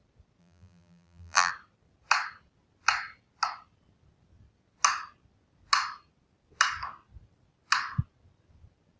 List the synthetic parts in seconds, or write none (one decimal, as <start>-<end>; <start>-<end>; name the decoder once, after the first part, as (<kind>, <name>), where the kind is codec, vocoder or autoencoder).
0.4-1.5 (vocoder, BigVGAN v2)